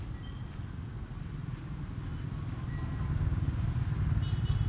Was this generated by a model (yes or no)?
no